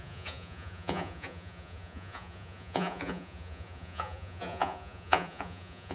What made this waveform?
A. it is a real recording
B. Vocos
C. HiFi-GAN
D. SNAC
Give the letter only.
B